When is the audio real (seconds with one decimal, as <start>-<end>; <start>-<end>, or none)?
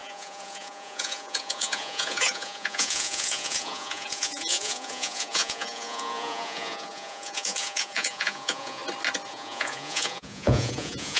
8.8-9.3